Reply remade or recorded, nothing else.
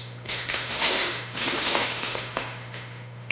remade